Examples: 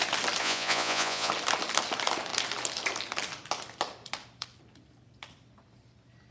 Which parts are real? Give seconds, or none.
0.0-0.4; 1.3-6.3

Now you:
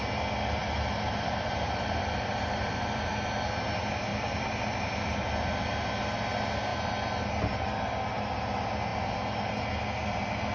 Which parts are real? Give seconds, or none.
0.0-0.6; 3.1-4.1; 4.8-10.5

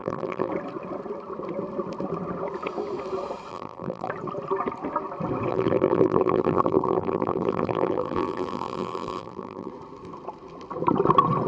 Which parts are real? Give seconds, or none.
0.5-3.5; 4.1-5.5; 9.7-11.5

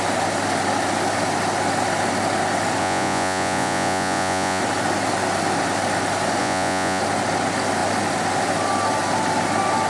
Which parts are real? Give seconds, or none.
0.0-2.8; 4.6-6.4; 7.0-9.9

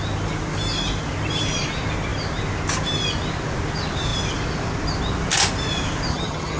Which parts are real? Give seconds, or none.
0.0-6.1

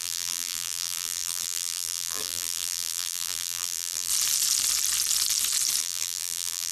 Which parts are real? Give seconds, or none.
4.1-5.8